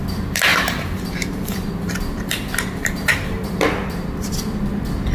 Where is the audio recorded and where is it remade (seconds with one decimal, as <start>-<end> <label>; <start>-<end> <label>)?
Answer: 0.0-0.5 recorded; 0.5-3.6 remade; 3.6-5.1 recorded